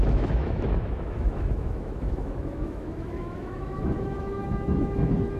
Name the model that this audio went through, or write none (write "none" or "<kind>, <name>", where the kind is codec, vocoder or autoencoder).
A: autoencoder, DAC-VAE